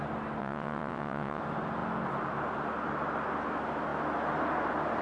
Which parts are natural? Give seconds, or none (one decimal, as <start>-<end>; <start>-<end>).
0.0-0.4; 1.4-5.0

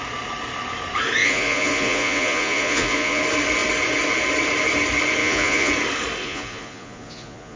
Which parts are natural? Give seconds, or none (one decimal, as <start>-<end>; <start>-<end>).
0.0-1.2; 3.2-5.2; 5.7-6.2

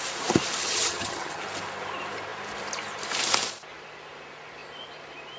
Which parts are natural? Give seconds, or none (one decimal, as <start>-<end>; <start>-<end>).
0.0-0.6; 1.4-5.4

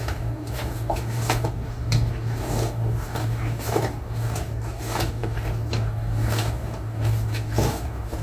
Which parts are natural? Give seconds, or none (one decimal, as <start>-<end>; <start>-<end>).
none